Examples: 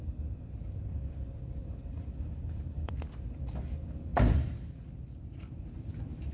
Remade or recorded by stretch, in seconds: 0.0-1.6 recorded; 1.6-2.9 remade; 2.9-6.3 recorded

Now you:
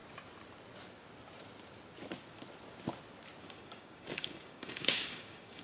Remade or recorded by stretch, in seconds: 0.0-3.4 recorded; 3.4-5.6 remade

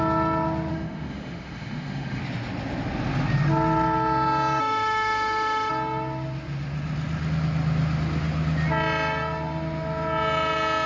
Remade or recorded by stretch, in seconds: 0.0-0.7 recorded; 0.7-2.2 remade; 2.2-4.6 recorded; 4.6-5.7 remade; 5.7-10.9 recorded

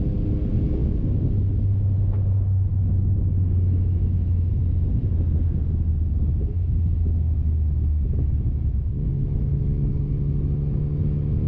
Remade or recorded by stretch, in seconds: 0.0-2.7 recorded; 2.7-4.5 remade; 4.5-6.1 recorded; 6.1-9.9 remade; 9.9-11.5 recorded